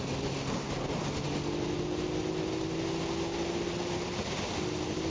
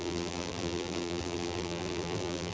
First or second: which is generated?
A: second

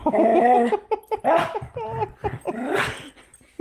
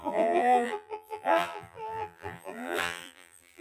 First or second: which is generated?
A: second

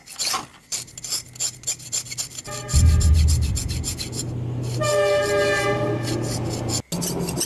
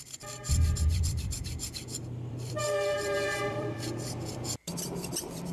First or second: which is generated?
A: second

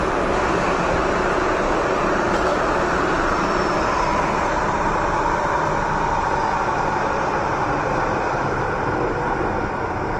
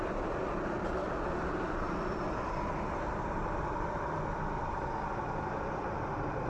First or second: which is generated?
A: second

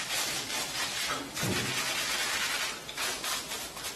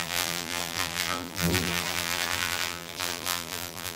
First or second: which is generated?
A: second